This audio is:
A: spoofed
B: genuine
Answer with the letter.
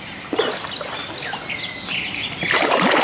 B